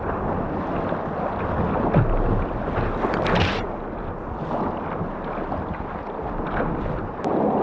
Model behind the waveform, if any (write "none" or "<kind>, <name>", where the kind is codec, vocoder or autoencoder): none